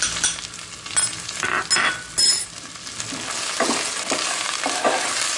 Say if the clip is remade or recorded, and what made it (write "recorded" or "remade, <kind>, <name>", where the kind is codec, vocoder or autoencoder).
recorded